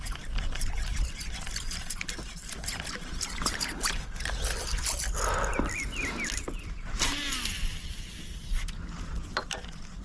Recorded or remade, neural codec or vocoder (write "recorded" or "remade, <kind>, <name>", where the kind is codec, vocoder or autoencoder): recorded